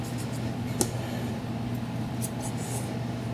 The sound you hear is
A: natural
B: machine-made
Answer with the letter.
A